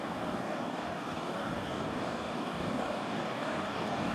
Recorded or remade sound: remade